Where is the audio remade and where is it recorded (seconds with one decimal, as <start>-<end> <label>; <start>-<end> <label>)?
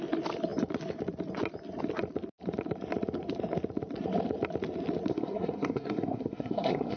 0.0-5.1 recorded; 5.1-7.0 remade